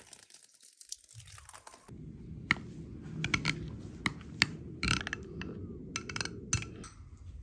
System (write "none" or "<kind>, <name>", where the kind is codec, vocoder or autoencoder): none